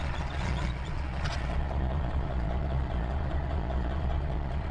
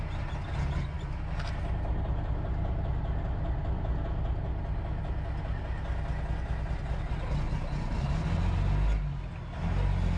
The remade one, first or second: first